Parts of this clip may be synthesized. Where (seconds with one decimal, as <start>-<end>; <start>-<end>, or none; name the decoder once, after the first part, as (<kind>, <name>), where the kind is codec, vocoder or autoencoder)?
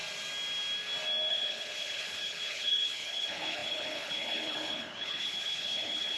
1.3-6.2 (codec, HILCodec)